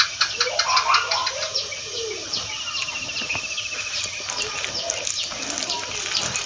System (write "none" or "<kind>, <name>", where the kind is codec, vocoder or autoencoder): none